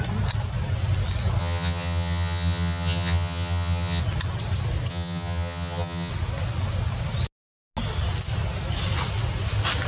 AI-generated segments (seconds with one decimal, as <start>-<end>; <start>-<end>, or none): 1.4-4.0; 4.9-6.1